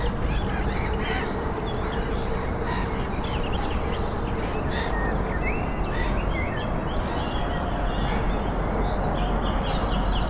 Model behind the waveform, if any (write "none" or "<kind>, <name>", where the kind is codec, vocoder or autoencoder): none